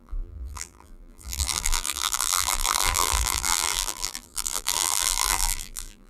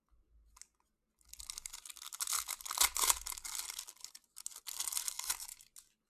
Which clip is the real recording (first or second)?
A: second